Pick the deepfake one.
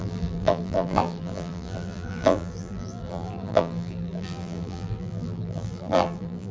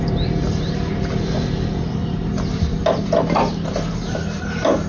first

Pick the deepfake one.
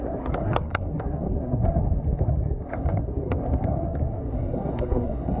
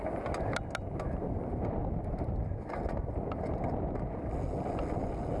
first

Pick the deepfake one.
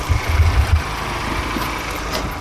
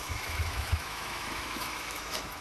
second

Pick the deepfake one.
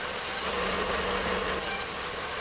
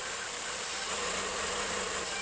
second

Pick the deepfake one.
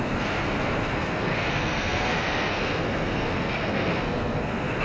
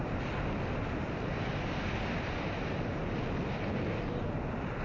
first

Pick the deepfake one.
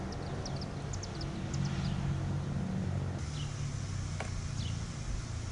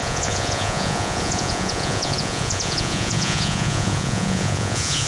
second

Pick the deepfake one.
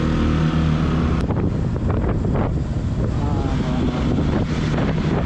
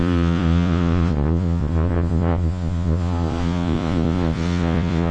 second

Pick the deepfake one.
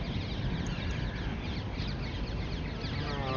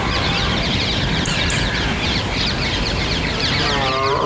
second